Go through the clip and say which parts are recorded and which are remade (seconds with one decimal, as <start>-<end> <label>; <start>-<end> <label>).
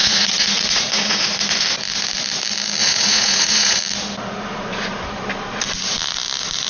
0.0-1.6 remade; 1.6-2.8 recorded; 2.8-3.8 remade; 3.8-6.7 recorded